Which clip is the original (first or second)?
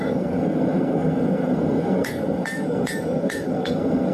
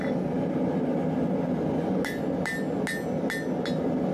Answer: second